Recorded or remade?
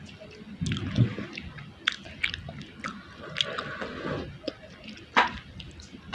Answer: recorded